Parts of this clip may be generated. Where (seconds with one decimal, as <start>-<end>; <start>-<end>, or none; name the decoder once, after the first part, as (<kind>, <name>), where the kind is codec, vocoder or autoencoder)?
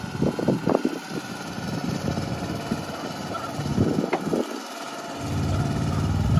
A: none